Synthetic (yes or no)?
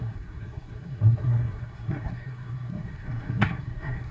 yes